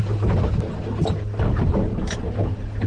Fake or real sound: real